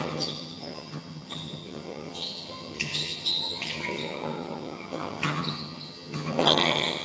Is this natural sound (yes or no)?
no